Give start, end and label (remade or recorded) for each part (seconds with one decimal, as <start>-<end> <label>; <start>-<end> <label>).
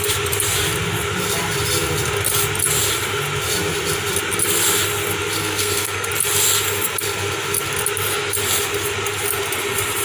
0.0-5.4 recorded; 5.4-6.1 remade; 6.1-10.0 recorded